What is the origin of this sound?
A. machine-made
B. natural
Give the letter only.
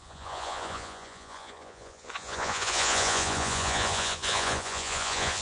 A